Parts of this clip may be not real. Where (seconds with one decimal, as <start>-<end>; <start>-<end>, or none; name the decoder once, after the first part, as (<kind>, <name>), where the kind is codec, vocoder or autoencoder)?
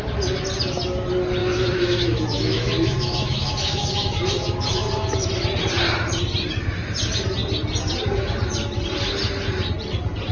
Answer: 1.4-5.3 (autoencoder, DAC-VAE)